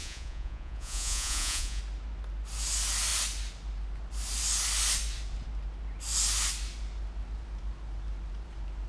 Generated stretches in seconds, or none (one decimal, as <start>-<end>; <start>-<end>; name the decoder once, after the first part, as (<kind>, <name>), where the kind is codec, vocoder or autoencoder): 0.0-1.8 (vocoder, Vocos)

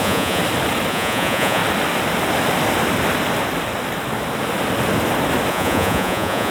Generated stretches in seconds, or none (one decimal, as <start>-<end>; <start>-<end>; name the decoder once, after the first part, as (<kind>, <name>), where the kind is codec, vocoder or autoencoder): 0.0-0.4 (vocoder, Vocos); 0.9-1.6; 5.5-6.5

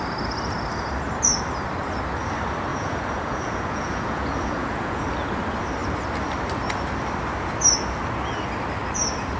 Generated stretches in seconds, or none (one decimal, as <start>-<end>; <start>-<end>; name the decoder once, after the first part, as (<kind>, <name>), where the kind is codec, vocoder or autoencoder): 2.7-5.0 (vocoder, Vocos)